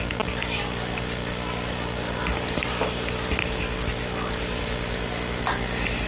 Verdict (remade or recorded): recorded